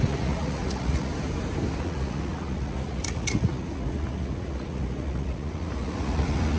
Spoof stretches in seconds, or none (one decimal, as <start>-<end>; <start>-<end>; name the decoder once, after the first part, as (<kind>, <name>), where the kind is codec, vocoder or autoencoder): 0.0-1.1 (vocoder, Vocos); 1.8-6.6